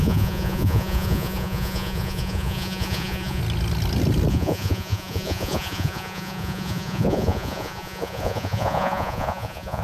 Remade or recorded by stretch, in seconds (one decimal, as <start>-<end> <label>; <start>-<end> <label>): 0.0-3.4 remade; 3.4-4.3 recorded; 4.3-9.8 remade